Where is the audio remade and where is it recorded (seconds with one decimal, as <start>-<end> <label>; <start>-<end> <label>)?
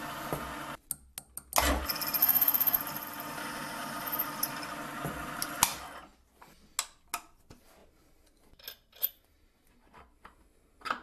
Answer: 0.0-2.2 recorded; 2.2-2.8 remade; 2.8-11.0 recorded